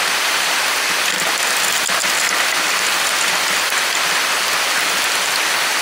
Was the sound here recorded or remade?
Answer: recorded